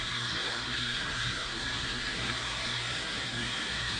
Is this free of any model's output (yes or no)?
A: no